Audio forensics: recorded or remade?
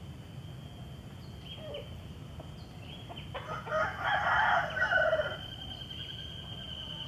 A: recorded